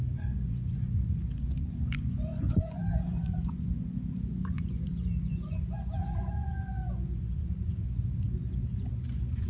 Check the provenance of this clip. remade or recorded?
remade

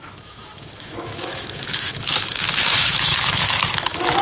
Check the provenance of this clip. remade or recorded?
remade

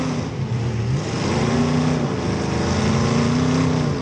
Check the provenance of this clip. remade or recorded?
recorded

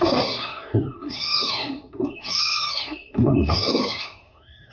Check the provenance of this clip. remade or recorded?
remade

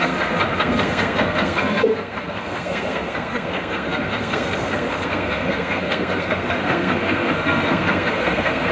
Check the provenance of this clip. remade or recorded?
remade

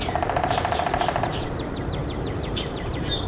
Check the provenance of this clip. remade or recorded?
remade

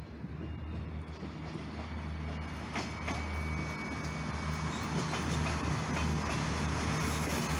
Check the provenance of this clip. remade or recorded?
recorded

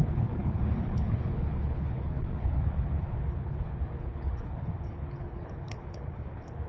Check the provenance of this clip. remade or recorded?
remade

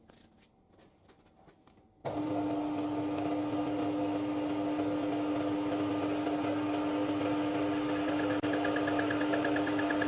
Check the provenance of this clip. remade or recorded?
recorded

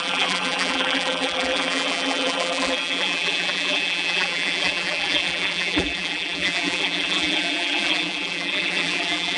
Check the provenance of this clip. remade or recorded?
remade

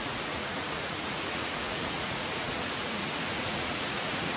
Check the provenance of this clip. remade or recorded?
remade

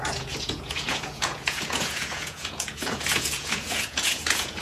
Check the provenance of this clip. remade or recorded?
remade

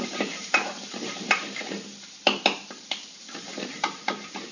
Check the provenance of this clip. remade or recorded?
remade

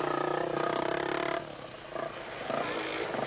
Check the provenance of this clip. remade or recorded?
recorded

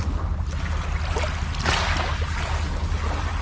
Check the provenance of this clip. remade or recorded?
recorded